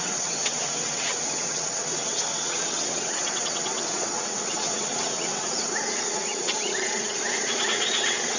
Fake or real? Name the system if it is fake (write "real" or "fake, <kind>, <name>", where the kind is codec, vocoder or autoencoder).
fake, vocoder, WaveNeXt